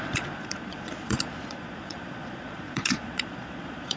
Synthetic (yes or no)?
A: yes